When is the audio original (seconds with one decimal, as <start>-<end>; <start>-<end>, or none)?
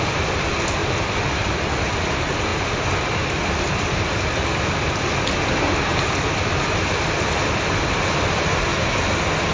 0.8-2.0; 2.5-4.5; 8.7-9.5